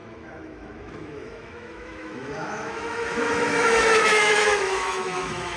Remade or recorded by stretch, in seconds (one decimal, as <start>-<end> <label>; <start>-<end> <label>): 0.0-5.6 remade